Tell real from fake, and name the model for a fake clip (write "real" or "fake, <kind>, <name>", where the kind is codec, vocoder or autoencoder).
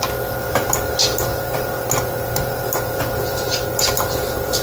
real